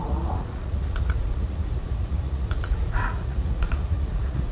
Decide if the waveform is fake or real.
fake